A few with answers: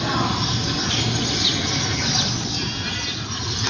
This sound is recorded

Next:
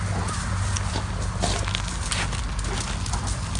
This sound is recorded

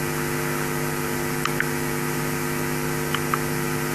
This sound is recorded